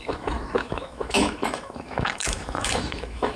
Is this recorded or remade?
remade